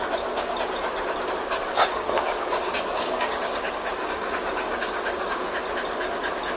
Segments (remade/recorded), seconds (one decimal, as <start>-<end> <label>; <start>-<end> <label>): 0.0-1.6 recorded; 1.6-5.6 remade; 5.6-6.6 recorded